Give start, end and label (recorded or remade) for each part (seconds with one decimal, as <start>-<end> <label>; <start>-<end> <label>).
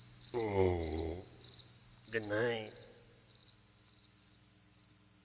0.0-5.2 recorded